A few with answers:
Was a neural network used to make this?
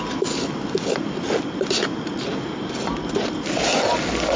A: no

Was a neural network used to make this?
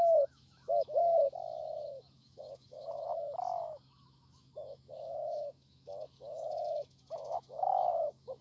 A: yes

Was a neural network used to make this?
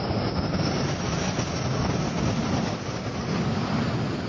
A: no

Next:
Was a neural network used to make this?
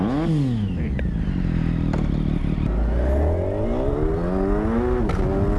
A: no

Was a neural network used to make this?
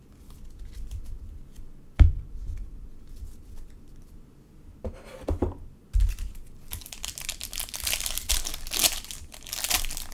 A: no